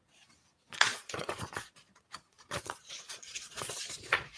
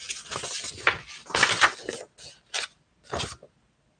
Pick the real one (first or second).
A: second